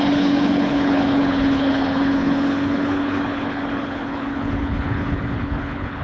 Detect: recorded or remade remade